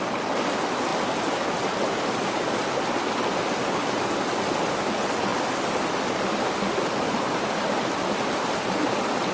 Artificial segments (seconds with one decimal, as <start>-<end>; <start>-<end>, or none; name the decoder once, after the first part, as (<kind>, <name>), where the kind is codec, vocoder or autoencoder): none